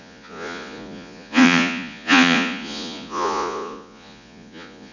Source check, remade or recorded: remade